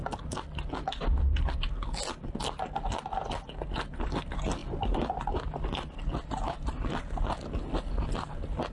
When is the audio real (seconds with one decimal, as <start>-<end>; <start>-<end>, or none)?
0.0-4.6; 6.3-8.7